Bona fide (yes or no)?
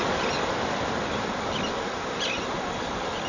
yes